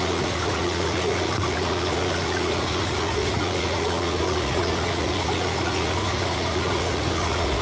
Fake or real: fake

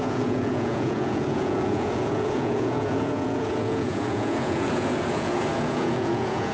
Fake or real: fake